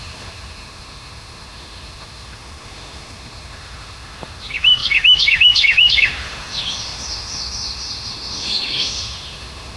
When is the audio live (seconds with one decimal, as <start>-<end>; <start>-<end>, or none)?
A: none